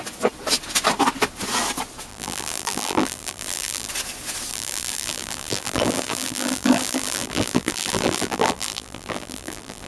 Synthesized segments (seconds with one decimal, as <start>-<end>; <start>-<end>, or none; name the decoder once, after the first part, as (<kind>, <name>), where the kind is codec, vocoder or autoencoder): 2.1-3.9 (vocoder, BigVGAN v2); 4.5-9.9